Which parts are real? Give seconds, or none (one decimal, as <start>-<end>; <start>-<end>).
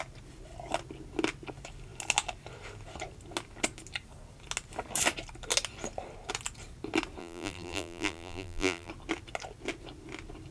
0.0-7.2; 8.9-10.5